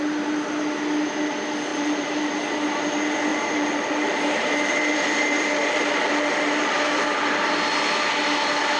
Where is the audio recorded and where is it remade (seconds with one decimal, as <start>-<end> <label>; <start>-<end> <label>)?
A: 0.0-1.7 recorded; 1.7-2.3 remade; 2.3-3.3 recorded; 3.3-7.3 remade; 7.3-8.8 recorded